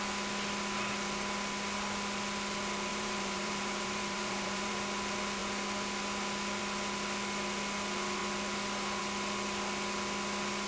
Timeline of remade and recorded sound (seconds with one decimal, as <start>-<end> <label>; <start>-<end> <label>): 0.0-2.9 recorded; 2.9-4.7 remade; 4.7-10.7 recorded